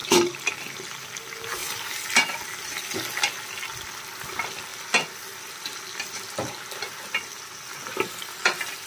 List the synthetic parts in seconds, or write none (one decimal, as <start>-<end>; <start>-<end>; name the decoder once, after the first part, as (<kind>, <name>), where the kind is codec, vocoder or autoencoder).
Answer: 0.0-0.5 (vocoder, BigVGAN v2); 4.7-6.3